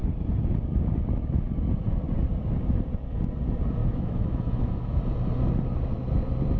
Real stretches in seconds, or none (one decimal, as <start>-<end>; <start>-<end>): 0.0-3.8; 5.0-6.6